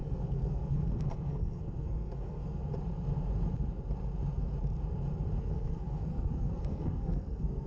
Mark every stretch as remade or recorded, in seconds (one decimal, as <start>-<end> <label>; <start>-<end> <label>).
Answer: 0.0-2.6 remade; 2.6-5.4 recorded; 5.4-7.7 remade